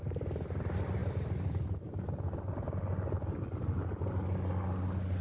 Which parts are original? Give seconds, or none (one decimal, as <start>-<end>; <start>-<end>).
0.0-5.2